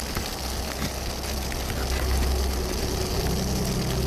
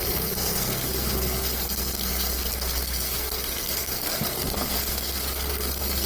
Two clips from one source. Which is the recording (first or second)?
first